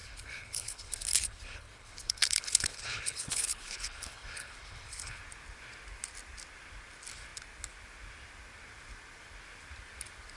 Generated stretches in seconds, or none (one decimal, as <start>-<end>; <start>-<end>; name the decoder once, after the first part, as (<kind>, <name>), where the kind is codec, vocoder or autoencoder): 0.0-5.2 (codec, HILCodec)